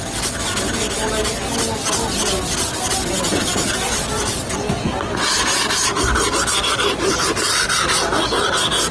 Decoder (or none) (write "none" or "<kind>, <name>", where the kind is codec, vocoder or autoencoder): none